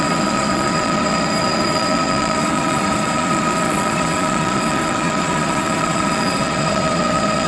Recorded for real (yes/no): no